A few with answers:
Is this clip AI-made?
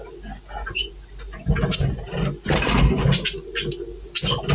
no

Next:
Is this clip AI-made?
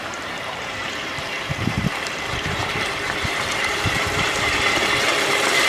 yes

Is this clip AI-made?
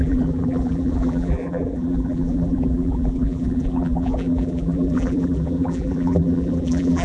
yes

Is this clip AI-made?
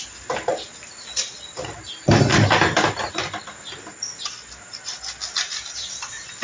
no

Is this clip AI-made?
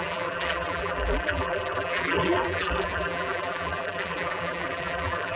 yes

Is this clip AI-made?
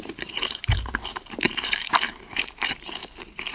yes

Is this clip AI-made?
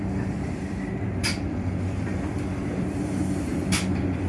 yes